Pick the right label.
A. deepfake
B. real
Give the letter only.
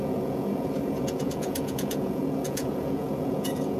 A